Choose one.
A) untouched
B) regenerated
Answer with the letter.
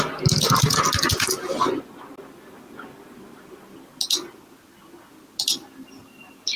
A